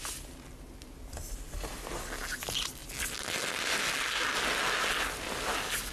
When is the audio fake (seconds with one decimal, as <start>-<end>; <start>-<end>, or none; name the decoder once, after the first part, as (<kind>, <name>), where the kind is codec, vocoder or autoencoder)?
none